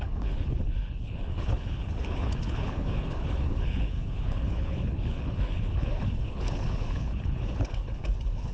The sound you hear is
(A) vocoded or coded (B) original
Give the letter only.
A